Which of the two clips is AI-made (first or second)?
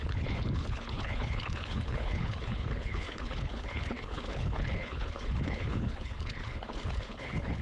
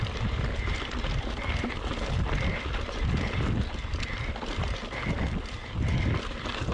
first